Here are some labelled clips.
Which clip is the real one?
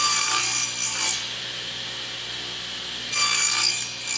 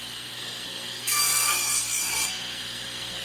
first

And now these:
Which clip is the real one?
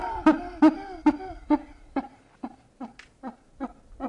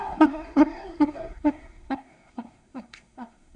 first